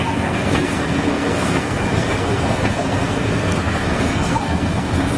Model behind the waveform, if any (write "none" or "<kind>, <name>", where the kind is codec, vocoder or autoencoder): codec, SNAC